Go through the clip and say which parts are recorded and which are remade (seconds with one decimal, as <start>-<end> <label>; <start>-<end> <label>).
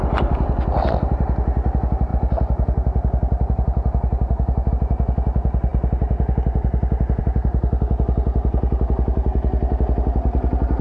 0.0-10.8 recorded